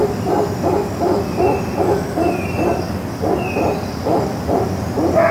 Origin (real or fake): real